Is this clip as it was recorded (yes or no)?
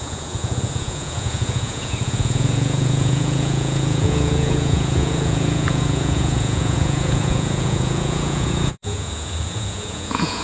no